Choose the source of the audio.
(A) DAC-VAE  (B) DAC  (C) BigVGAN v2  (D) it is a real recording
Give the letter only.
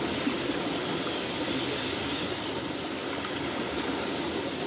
D